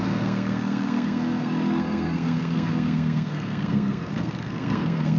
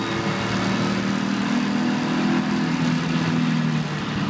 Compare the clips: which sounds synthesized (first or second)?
first